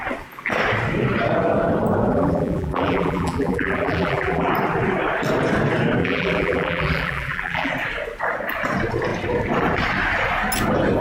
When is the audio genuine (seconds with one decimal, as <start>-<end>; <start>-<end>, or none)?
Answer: 0.0-2.1; 4.5-6.0; 7.7-11.0